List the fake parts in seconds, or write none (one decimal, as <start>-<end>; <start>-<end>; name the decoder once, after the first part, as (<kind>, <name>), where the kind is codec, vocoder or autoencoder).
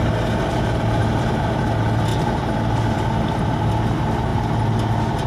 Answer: 2.1-3.7 (vocoder, BigVGAN v2)